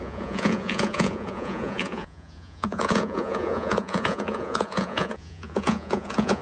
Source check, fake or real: fake